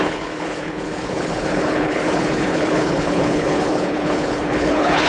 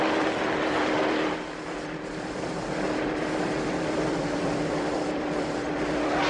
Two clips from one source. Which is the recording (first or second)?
second